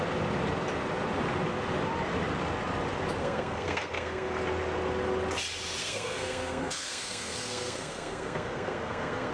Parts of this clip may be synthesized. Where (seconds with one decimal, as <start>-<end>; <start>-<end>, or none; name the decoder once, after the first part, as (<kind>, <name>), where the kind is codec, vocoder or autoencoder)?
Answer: 3.2-4.4 (codec, SNAC); 5.8-9.3